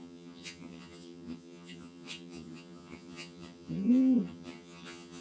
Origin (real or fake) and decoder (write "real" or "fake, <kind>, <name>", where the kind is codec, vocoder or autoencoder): fake, vocoder, HiFi-GAN